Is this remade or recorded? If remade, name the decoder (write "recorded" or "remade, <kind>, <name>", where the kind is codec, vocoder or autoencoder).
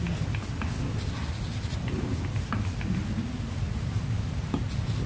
recorded